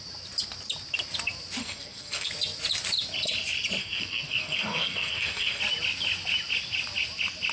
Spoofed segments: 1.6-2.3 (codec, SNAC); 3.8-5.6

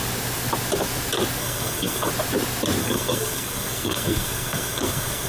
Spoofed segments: 1.4-2.1 (codec, SNAC); 2.8-5.3

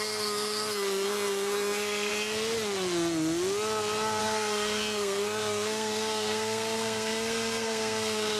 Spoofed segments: 0.0-2.1 (codec, SNAC); 4.2-8.4

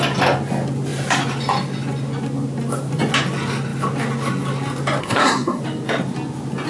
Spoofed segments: 5.0-5.6 (codec, SNAC)

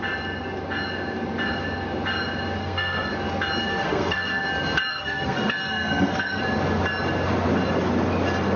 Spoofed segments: 2.6-3.1 (codec, SNAC); 3.7-4.4; 4.9-6.4